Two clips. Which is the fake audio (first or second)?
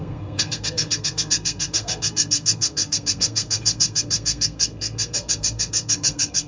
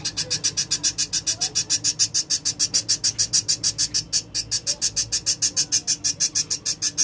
first